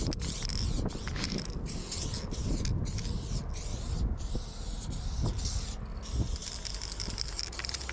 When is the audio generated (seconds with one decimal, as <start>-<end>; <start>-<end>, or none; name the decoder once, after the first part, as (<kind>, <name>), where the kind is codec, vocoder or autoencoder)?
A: none